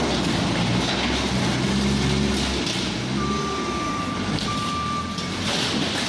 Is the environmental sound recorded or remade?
recorded